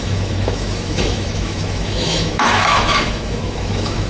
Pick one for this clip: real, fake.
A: fake